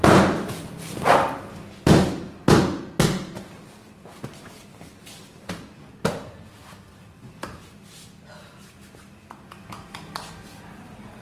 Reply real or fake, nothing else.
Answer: real